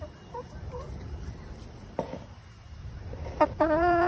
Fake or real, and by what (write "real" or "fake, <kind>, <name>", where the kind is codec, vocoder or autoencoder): fake, vocoder, BigVGAN v2